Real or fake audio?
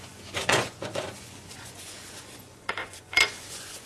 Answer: fake